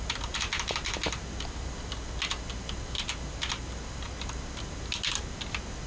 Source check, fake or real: real